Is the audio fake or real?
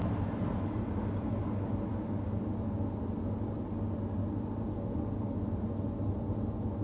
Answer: real